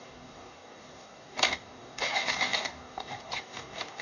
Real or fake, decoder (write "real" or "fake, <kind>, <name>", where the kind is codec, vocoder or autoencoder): fake, codec, DAC